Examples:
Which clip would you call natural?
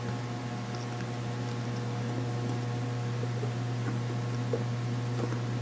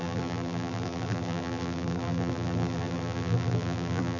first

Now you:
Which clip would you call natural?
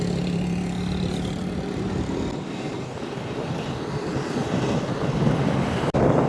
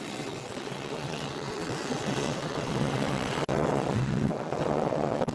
first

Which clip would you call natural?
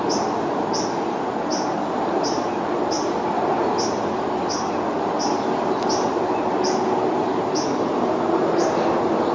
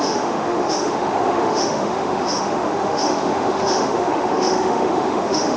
first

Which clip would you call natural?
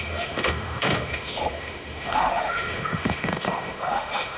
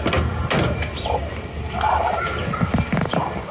second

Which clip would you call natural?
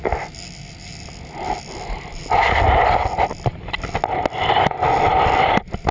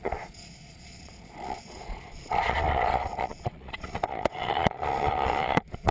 first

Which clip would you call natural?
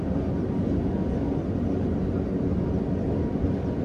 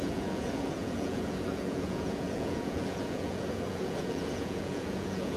first